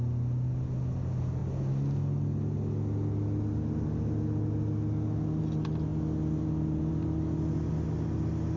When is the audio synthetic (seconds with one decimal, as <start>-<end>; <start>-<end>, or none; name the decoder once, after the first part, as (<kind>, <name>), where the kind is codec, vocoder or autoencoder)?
none

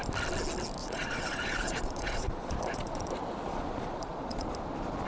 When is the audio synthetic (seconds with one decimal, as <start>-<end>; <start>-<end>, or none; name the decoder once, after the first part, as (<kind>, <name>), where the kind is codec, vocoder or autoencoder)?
0.8-3.1 (vocoder, Vocos); 3.5-4.5

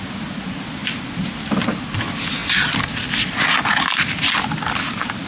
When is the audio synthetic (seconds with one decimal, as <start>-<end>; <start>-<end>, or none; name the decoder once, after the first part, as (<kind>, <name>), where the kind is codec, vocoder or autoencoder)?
none

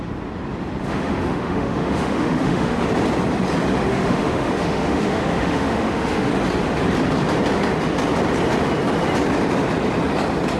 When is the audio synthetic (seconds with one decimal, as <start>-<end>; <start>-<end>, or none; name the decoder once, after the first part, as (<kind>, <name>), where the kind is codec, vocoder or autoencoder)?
0.8-2.8 (autoencoder, DAC-VAE); 3.9-6.3